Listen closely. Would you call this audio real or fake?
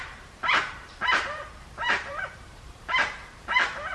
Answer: fake